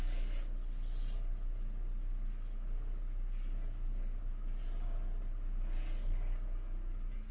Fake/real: real